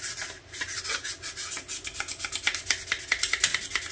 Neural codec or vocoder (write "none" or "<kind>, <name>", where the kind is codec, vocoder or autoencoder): none